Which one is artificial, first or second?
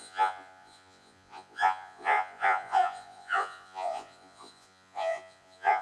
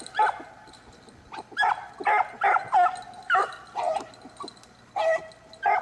first